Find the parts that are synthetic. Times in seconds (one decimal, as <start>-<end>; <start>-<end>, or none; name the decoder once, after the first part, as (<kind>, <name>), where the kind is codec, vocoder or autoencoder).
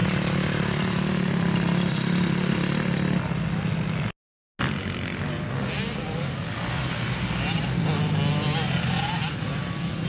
none